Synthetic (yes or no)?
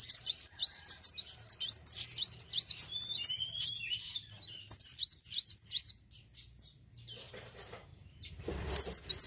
yes